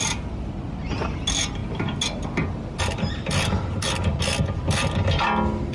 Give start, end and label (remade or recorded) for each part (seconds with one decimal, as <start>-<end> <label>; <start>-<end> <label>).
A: 0.0-5.7 recorded